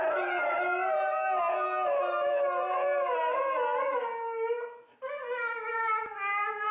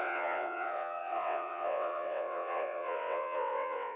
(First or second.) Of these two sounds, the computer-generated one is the second